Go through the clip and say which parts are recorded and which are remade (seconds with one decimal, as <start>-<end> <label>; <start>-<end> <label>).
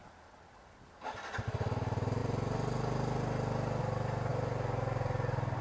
0.0-5.6 recorded